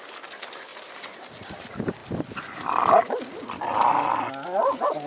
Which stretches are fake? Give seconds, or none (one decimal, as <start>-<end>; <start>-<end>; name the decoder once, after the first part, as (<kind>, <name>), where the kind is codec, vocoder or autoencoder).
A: none